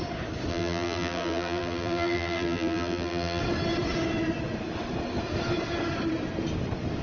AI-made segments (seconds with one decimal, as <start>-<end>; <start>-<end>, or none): 0.5-3.4